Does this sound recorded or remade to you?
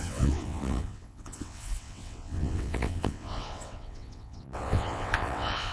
remade